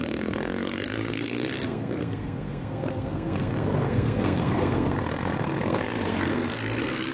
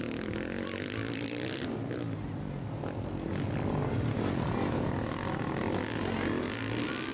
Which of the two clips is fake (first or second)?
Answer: first